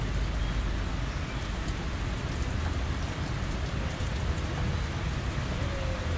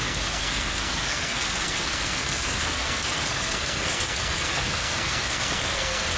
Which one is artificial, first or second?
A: second